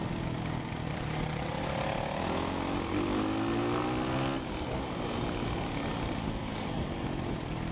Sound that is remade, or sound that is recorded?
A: recorded